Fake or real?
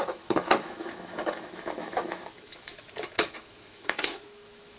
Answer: fake